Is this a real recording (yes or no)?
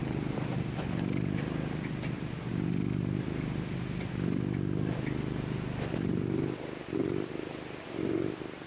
yes